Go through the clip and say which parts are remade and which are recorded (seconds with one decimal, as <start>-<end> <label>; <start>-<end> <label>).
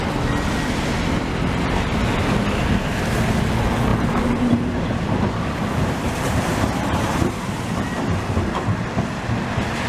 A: 0.0-3.9 recorded; 3.9-7.3 remade; 7.3-9.9 recorded